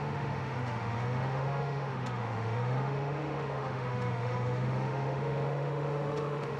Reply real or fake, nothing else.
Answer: fake